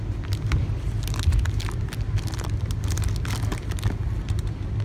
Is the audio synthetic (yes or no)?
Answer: no